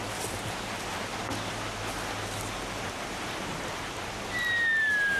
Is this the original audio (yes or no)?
yes